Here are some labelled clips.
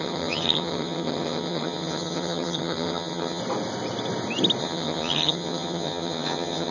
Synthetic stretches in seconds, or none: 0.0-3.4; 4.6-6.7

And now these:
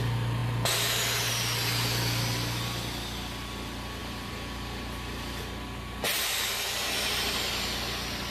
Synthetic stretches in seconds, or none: 4.0-6.5

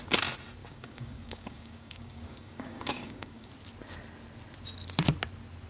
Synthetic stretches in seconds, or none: 0.6-3.5

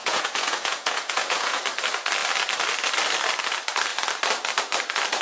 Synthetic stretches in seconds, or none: 0.0-1.6

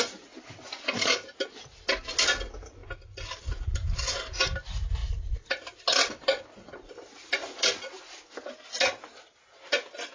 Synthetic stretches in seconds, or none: none

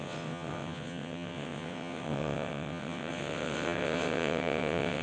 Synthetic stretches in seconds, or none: 0.0-5.0

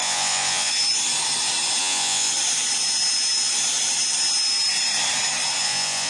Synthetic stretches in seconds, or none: 0.0-0.7; 1.8-2.3; 5.6-6.1